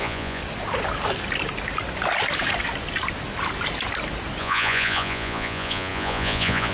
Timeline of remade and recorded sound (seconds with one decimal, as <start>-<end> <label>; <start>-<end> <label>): 0.0-0.4 remade; 0.4-4.4 recorded; 4.4-6.7 remade